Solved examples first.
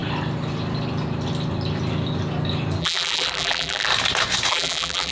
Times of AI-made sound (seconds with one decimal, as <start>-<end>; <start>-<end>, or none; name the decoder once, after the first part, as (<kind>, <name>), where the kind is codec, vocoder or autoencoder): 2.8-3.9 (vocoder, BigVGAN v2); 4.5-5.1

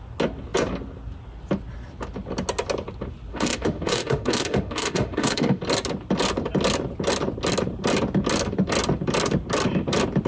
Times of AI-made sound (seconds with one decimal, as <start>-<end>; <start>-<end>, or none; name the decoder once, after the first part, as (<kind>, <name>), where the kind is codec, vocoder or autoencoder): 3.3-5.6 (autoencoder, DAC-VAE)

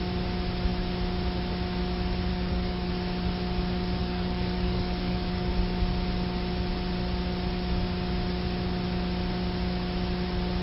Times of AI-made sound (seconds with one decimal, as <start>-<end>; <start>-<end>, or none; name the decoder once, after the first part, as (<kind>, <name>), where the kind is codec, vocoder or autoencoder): 2.3-2.9 (codec, DAC); 4.0-5.5

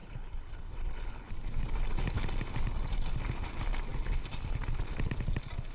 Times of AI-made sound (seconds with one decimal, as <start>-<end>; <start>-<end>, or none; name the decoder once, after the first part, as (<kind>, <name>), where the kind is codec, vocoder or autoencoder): 0.0-1.3 (codec, HILCodec)